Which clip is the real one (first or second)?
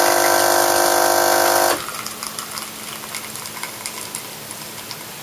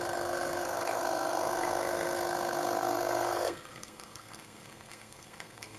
first